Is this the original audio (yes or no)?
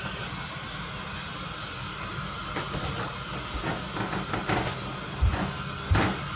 yes